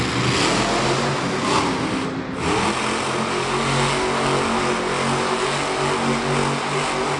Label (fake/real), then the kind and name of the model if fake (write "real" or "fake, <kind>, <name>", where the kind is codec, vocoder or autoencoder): real